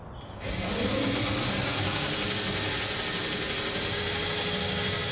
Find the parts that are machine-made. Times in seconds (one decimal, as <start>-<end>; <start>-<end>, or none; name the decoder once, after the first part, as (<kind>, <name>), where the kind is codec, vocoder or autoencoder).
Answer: none